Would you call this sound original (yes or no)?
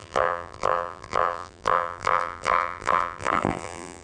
no